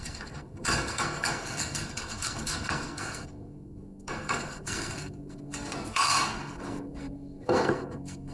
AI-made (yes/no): yes